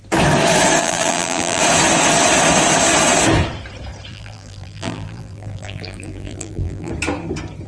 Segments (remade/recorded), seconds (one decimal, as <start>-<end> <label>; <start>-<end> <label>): 0.0-0.8 recorded; 0.8-1.6 remade; 1.6-4.1 recorded; 4.1-6.9 remade; 6.9-7.7 recorded